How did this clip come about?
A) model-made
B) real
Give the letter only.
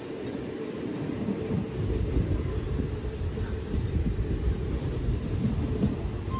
B